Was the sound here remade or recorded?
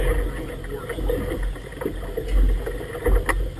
recorded